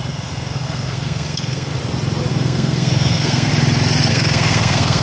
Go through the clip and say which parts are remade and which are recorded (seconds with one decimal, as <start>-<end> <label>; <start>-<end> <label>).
0.0-1.7 remade; 1.7-2.3 recorded; 2.3-3.5 remade; 3.5-4.1 recorded; 4.1-5.0 remade